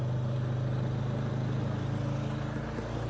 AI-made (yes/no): no